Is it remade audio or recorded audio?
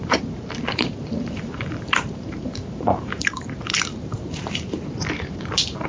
remade